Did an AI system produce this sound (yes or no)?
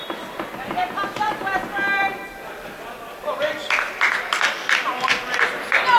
no